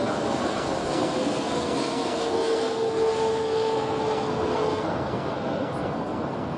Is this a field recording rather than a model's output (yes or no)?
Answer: no